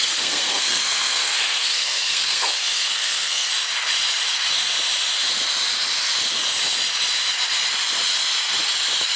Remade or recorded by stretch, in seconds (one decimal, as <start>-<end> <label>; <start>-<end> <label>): 0.0-3.5 remade; 3.5-9.2 recorded